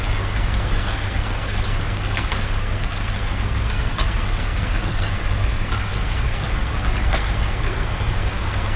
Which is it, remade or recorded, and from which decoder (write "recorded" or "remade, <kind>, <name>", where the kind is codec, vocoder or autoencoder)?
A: remade, codec, SNAC